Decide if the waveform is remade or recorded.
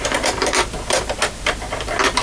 recorded